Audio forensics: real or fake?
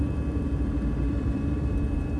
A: fake